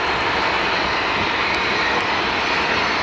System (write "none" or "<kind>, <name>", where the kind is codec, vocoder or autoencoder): none